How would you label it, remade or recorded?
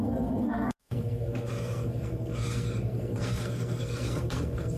remade